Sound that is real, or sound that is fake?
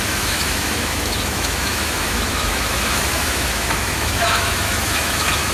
fake